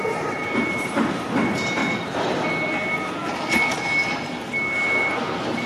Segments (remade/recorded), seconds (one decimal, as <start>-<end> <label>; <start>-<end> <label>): 0.0-1.8 remade; 1.8-5.2 recorded; 5.2-5.7 remade